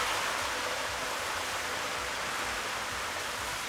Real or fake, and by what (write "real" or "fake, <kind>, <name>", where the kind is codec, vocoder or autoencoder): real